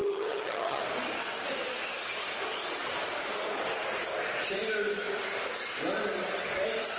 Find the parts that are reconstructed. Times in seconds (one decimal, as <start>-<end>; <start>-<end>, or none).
0.0-0.8